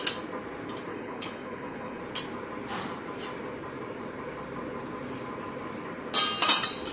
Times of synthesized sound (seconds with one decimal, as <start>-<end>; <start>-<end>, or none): 0.9-2.0